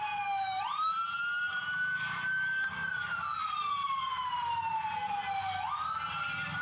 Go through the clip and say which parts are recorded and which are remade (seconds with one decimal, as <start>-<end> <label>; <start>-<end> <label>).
0.0-6.6 recorded